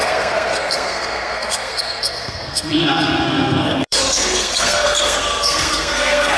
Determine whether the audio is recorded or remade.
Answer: remade